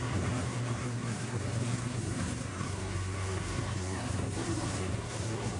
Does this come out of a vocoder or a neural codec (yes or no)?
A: yes